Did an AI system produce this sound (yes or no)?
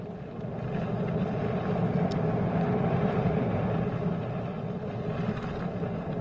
no